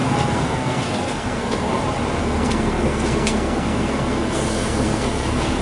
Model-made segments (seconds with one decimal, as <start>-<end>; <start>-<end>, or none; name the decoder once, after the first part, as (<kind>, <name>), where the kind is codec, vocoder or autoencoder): 0.0-1.8 (codec, SNAC); 2.2-5.6